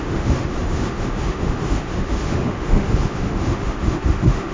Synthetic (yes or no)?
yes